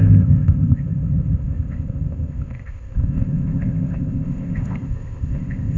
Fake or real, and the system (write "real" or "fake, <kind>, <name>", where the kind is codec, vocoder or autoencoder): fake, codec, ZipCodec